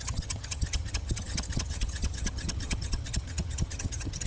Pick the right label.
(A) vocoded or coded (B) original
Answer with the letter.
A